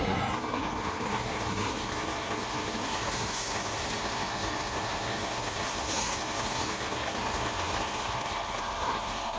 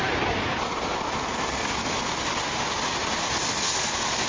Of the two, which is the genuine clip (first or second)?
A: second